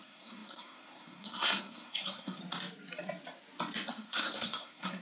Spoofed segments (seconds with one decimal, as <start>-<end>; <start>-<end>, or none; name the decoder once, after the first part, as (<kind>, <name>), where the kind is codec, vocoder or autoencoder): 0.0-2.4 (codec, SNAC); 3.9-5.0

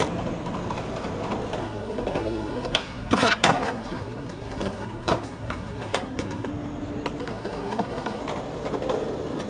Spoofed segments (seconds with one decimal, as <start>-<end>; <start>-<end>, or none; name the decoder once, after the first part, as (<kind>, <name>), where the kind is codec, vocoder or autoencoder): 1.6-6.5 (codec, SNAC); 7.2-8.2

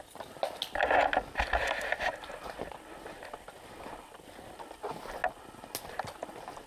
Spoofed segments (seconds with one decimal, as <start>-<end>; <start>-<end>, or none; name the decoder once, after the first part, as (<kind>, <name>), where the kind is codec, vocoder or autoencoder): none

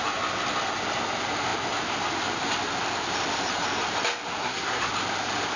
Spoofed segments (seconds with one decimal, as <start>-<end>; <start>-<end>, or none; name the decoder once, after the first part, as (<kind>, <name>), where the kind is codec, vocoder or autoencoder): 4.4-4.9 (codec, SNAC)